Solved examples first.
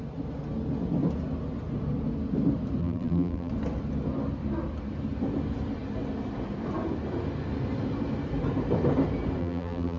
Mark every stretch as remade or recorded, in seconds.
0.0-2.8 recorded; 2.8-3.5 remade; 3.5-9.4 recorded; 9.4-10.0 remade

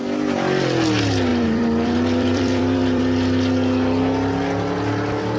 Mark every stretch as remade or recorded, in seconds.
0.0-1.3 recorded; 1.3-3.0 remade; 3.0-5.4 recorded

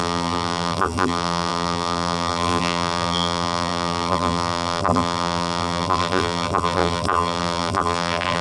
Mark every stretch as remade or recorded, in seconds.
0.0-8.4 remade

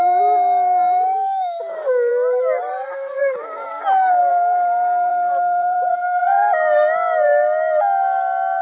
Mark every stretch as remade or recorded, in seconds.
0.0-3.2 recorded; 3.2-3.7 remade; 3.7-4.2 recorded; 4.2-6.3 remade; 6.3-8.6 recorded

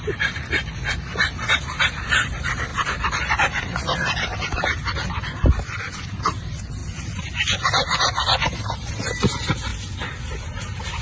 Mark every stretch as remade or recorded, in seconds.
0.0-9.7 remade; 9.7-10.6 recorded; 10.6-11.0 remade

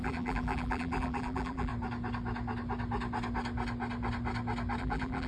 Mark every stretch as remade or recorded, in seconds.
0.0-1.7 remade; 1.7-4.8 recorded; 4.8-5.3 remade